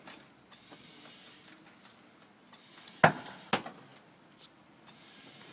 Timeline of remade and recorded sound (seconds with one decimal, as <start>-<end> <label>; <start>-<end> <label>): 0.0-5.5 recorded